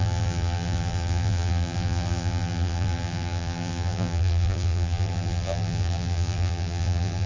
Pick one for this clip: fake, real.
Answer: fake